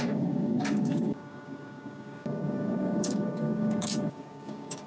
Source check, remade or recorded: remade